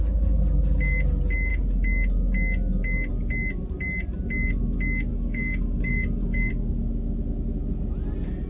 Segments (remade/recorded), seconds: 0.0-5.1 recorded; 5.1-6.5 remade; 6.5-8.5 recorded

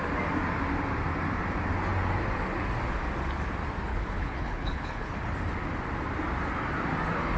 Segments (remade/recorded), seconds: 0.0-3.9 recorded; 3.9-5.2 remade; 5.2-7.4 recorded

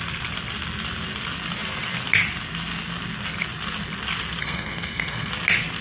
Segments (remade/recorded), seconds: 0.0-4.4 recorded; 4.4-5.3 remade; 5.3-5.8 recorded

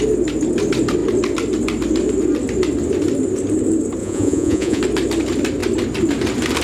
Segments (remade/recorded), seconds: 0.0-4.0 recorded; 4.0-4.8 remade; 4.8-6.6 recorded